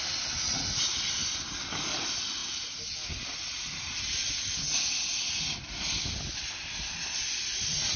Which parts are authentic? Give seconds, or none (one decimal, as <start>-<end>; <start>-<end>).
0.0-8.0